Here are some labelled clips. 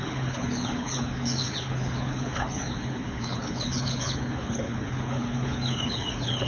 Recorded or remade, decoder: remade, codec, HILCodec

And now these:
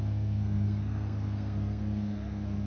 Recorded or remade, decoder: remade, codec, SNAC